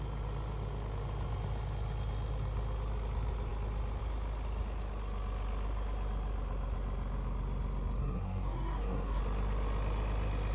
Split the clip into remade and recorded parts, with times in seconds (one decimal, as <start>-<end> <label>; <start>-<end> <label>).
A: 0.0-8.0 recorded; 8.0-9.2 remade; 9.2-10.5 recorded

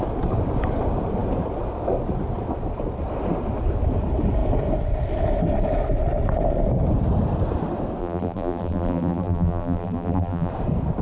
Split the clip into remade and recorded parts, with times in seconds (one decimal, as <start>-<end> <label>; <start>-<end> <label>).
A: 0.0-8.0 recorded; 8.0-10.5 remade; 10.5-11.0 recorded